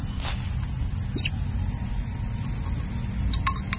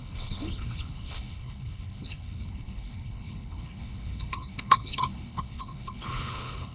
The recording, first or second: first